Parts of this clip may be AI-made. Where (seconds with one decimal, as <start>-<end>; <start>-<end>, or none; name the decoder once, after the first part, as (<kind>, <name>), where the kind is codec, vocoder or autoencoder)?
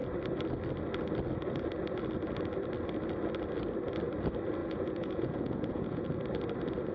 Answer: 4.6-6.0 (vocoder, Vocos)